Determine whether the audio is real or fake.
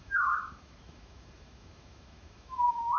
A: fake